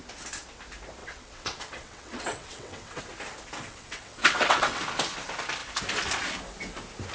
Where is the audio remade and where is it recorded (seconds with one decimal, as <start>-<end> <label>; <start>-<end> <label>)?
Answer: 0.0-1.0 recorded; 1.0-3.0 remade; 3.0-3.7 recorded; 3.7-4.8 remade; 4.8-7.1 recorded